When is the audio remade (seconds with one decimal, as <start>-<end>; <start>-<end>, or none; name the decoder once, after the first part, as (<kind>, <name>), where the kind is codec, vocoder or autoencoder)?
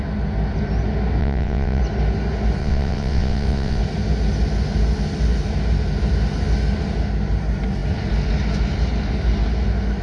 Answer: 1.2-1.8 (vocoder, WaveNeXt); 2.6-3.8